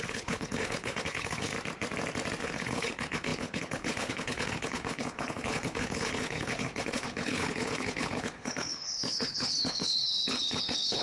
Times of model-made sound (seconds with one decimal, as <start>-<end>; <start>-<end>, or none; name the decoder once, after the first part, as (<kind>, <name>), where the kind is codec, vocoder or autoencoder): 0.0-1.5 (codec, HILCodec); 2.4-11.0